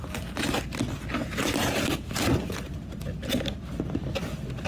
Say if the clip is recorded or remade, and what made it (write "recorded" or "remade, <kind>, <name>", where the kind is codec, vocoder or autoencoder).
recorded